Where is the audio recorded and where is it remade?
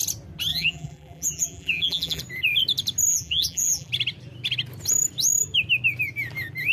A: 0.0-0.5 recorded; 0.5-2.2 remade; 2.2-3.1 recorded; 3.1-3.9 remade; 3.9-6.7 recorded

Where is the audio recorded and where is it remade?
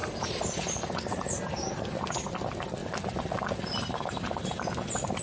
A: 0.0-1.4 remade; 1.4-2.8 recorded; 2.8-4.0 remade; 4.0-5.2 recorded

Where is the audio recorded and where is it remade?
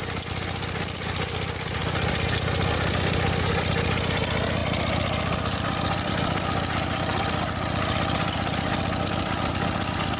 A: 0.0-1.8 recorded; 1.8-3.5 remade; 3.5-4.6 recorded; 4.6-9.5 remade; 9.5-10.2 recorded